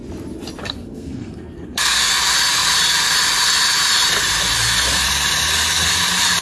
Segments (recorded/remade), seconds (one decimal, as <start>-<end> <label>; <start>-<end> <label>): 0.0-0.6 recorded; 0.6-2.1 remade; 2.1-6.4 recorded